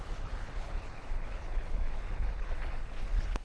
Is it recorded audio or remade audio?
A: remade